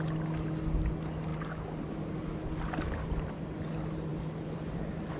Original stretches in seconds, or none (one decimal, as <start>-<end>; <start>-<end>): 0.0-4.1